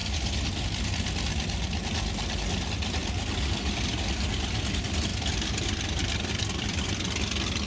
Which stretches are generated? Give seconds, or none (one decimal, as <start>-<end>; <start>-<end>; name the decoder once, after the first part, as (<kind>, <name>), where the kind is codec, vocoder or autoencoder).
5.1-6.9 (vocoder, BigVGAN v2)